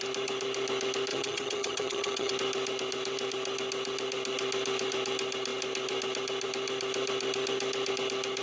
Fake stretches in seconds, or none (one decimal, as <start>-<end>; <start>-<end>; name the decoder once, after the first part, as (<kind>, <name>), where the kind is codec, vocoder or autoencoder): 1.1-2.3 (vocoder, HiFi-GAN)